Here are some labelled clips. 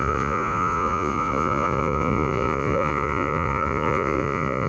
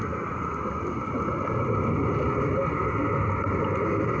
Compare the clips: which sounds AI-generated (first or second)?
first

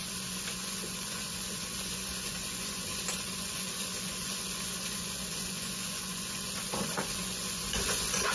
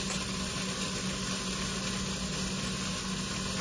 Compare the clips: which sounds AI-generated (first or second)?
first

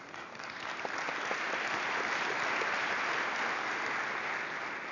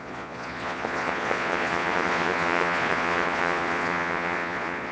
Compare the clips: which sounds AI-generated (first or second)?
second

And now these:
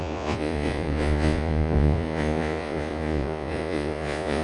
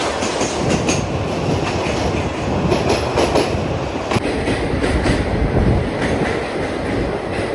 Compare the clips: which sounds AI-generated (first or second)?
first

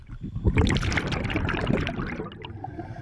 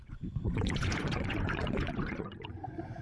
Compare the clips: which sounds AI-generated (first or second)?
second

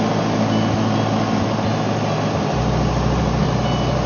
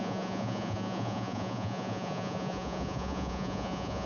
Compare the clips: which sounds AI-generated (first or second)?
second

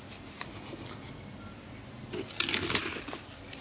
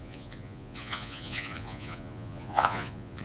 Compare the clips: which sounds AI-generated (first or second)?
second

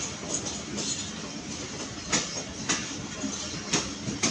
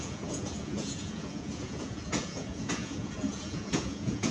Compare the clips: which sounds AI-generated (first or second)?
second